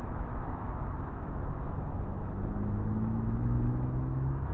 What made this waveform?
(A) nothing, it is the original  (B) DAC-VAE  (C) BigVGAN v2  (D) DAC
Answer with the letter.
B